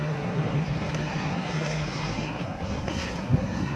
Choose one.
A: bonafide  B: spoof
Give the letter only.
B